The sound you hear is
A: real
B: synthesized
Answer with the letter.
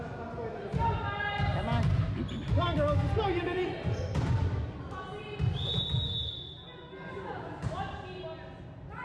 A